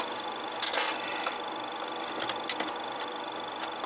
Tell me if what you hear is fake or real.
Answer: real